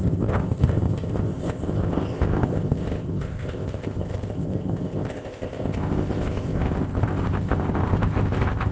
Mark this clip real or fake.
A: fake